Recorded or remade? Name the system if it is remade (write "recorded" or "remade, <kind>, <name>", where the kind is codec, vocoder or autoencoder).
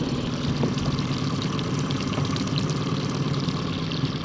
recorded